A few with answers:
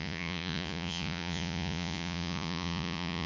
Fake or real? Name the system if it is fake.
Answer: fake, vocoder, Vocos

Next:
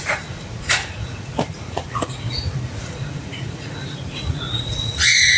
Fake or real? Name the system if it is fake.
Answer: fake, vocoder, Vocos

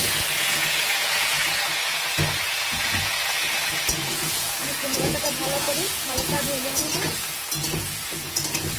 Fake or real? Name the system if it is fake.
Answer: fake, vocoder, Vocos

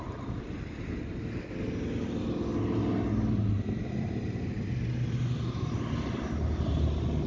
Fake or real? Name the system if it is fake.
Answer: real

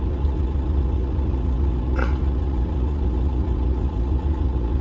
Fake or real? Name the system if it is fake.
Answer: fake, vocoder, Vocos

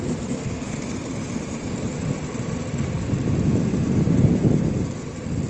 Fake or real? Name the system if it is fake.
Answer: real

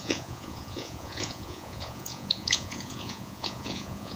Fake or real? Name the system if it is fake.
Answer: fake, vocoder, Vocos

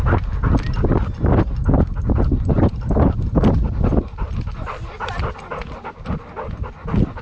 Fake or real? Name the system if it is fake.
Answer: real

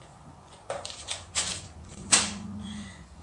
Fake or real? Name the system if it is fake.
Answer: fake, vocoder, Vocos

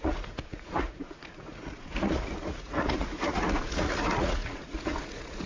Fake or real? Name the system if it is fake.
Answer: fake, vocoder, Vocos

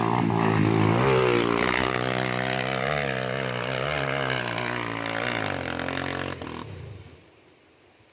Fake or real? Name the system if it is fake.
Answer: real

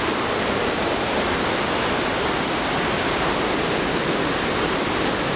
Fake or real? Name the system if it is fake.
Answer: real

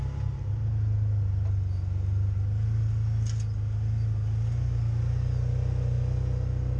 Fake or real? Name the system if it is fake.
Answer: real